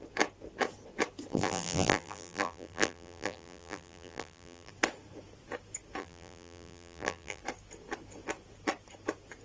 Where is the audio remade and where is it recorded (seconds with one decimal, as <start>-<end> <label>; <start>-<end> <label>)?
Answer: 0.0-1.3 recorded; 1.3-4.7 remade; 4.7-6.0 recorded; 6.0-7.4 remade; 7.4-9.4 recorded